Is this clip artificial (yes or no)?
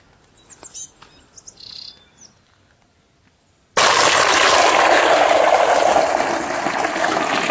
no